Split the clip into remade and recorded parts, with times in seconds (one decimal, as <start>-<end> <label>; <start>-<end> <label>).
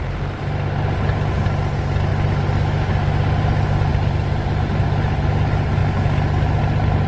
0.0-3.9 recorded; 3.9-4.7 remade; 4.7-7.1 recorded